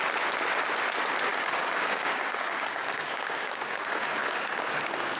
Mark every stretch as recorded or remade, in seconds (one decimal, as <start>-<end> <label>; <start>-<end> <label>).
0.0-1.3 recorded; 1.3-4.4 remade; 4.4-5.2 recorded